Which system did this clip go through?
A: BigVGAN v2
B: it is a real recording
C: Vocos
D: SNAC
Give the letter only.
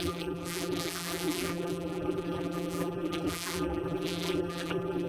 A